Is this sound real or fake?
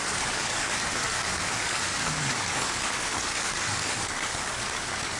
fake